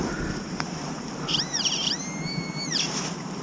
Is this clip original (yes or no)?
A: no